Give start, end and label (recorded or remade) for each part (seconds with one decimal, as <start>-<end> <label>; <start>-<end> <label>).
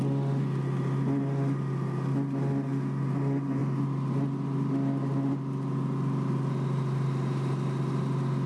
0.0-8.5 recorded